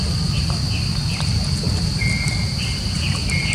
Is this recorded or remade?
recorded